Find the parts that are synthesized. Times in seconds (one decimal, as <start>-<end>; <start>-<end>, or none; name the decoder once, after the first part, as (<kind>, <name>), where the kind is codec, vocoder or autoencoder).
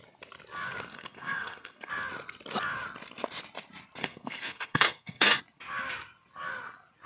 0.9-1.9 (codec, SNAC); 4.0-5.4